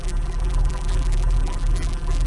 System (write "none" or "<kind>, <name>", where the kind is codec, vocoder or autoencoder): vocoder, BigVGAN v2